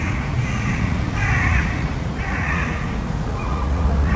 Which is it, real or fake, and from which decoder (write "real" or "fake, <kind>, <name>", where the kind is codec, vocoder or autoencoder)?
fake, vocoder, Vocos